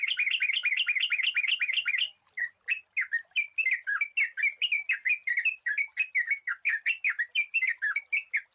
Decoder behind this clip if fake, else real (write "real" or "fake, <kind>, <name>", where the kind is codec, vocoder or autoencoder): real